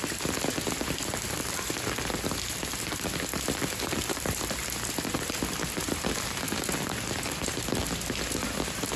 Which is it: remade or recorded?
remade